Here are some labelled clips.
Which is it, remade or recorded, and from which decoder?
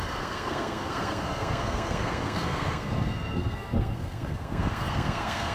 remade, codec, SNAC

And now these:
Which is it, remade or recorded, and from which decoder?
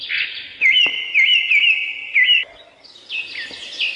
recorded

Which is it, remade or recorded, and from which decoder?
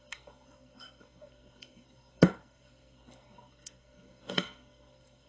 remade, codec, SNAC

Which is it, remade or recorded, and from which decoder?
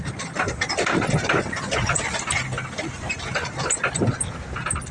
recorded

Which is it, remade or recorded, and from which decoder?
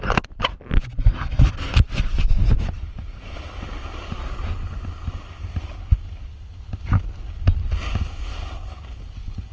recorded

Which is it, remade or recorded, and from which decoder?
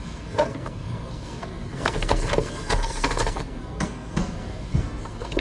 remade, codec, SNAC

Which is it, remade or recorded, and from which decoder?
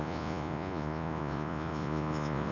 remade, vocoder, Vocos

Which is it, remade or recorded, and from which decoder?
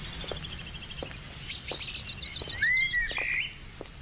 recorded